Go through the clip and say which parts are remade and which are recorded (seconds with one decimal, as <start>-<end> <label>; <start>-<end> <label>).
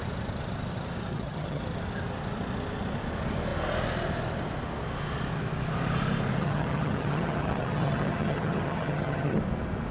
0.0-1.1 recorded; 1.1-1.6 remade; 1.6-6.4 recorded; 6.4-9.4 remade; 9.4-9.9 recorded